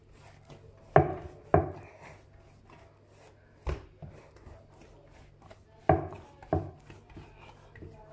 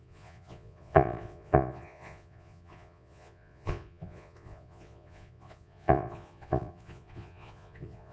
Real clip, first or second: first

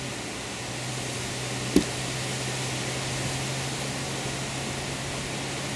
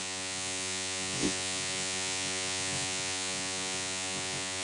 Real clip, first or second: first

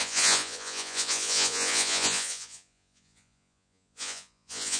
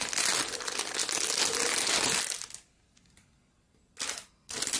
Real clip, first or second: second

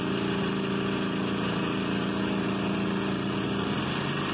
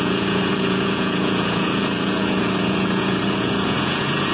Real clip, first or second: first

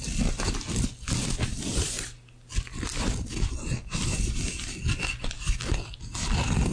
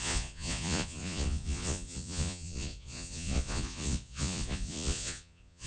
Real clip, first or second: first